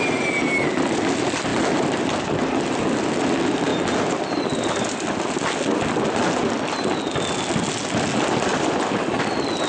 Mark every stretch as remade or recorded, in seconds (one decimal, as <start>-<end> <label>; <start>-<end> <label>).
0.0-9.7 recorded